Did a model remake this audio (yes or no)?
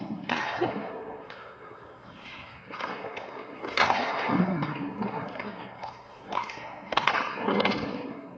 yes